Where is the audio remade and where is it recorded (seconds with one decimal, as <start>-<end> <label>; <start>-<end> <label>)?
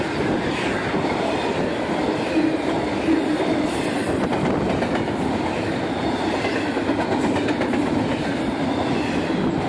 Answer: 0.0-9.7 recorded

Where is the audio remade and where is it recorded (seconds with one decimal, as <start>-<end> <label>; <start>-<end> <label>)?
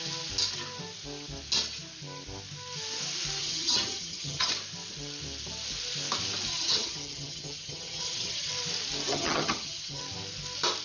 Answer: 0.0-3.4 recorded; 3.4-4.5 remade; 4.5-6.5 recorded; 6.5-8.5 remade; 8.5-9.1 recorded; 9.1-10.0 remade; 10.0-10.8 recorded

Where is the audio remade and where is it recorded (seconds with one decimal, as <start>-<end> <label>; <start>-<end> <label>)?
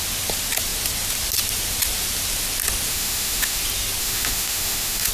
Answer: 0.0-2.9 recorded; 2.9-3.6 remade; 3.6-4.0 recorded; 4.0-5.1 remade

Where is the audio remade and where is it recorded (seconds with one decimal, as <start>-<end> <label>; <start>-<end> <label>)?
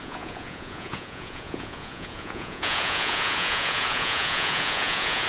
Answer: 0.0-5.3 remade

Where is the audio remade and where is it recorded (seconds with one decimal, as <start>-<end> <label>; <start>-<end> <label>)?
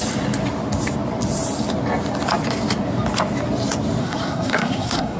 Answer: 0.0-4.0 recorded; 4.0-5.2 remade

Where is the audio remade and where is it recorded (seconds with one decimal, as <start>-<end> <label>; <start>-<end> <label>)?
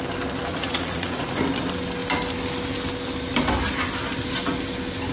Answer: 0.0-0.5 recorded; 0.5-1.4 remade; 1.4-5.1 recorded